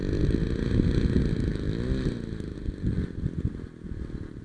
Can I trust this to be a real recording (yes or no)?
yes